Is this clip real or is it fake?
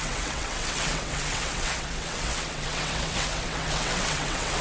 fake